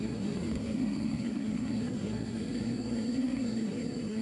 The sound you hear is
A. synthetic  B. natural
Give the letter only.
A